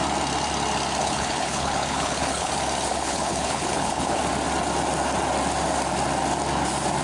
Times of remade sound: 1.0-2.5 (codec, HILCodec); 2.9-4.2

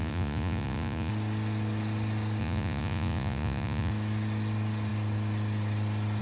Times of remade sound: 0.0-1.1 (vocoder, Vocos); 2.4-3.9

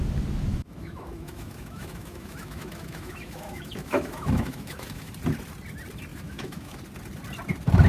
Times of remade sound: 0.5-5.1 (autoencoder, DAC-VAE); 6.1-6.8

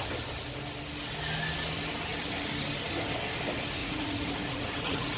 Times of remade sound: 3.8-5.2 (vocoder, Vocos)

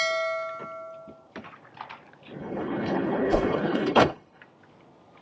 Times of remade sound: 2.4-4.4 (codec, HILCodec)